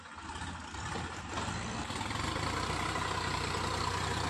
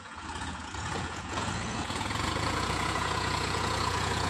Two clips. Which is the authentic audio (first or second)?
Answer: first